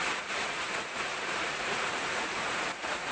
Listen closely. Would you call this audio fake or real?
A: fake